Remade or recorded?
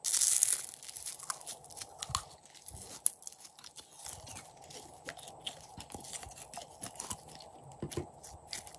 recorded